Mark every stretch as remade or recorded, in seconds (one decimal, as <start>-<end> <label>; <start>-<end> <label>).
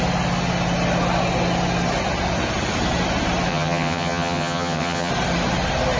0.0-3.5 recorded; 3.5-5.1 remade; 5.1-6.0 recorded